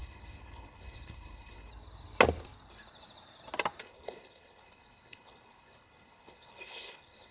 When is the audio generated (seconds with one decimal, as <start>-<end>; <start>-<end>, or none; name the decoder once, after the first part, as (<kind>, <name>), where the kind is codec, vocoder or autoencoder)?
0.0-1.7 (codec, HILCodec); 3.8-7.3